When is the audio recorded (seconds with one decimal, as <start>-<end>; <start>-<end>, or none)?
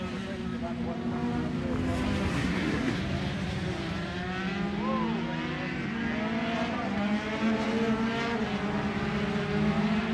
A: 0.0-2.3; 3.0-10.1